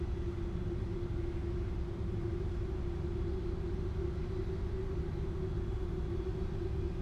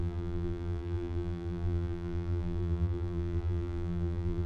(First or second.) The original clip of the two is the first